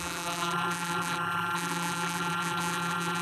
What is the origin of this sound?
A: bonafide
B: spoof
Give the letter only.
B